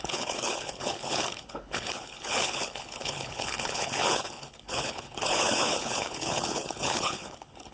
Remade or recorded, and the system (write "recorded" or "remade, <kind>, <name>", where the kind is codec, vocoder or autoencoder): remade, codec, HILCodec